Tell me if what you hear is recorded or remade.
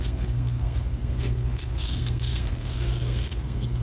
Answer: remade